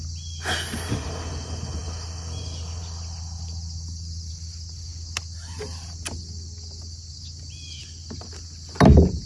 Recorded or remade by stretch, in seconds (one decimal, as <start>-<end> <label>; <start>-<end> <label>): 0.0-9.3 recorded